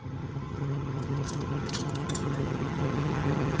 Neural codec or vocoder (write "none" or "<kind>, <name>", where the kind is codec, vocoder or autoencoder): vocoder, HiFi-GAN